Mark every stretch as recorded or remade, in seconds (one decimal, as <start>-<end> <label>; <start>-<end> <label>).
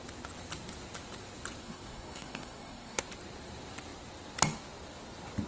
0.0-1.6 recorded; 1.6-3.0 remade; 3.0-5.5 recorded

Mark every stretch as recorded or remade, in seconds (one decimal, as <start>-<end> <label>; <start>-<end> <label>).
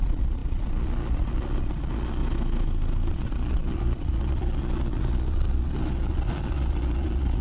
0.0-2.2 remade; 2.2-3.1 recorded; 3.1-7.4 remade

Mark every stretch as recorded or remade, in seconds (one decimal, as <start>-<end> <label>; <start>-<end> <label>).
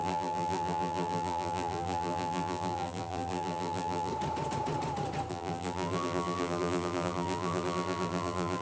0.0-4.1 remade; 4.1-5.3 recorded; 5.3-8.6 remade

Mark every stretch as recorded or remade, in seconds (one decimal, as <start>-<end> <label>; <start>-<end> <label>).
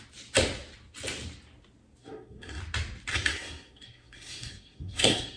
0.0-2.0 recorded; 2.0-2.6 remade; 2.6-3.1 recorded; 3.1-5.4 remade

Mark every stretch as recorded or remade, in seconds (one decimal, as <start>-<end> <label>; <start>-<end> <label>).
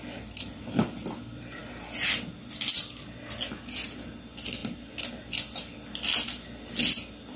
0.0-7.4 recorded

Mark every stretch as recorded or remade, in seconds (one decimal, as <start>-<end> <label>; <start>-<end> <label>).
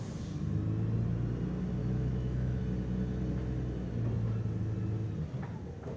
0.0-1.8 recorded; 1.8-2.6 remade; 2.6-6.0 recorded